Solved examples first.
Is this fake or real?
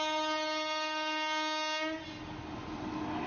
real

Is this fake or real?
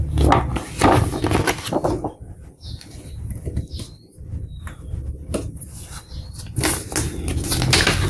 real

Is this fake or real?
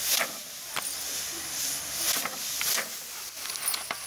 real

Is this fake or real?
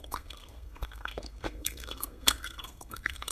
fake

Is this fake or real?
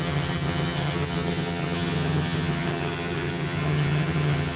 fake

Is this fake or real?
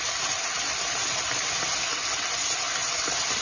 real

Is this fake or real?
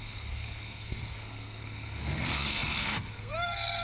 fake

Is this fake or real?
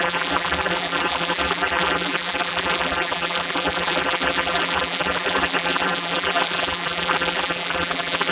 fake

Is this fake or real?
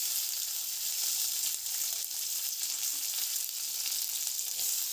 real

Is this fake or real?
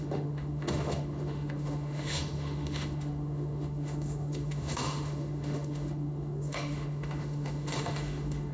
fake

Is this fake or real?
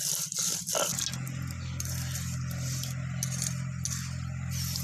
real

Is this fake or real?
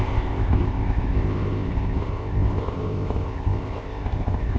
fake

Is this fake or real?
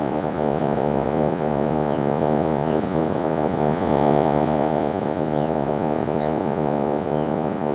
fake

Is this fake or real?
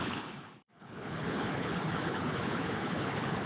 fake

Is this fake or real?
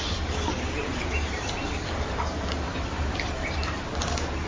fake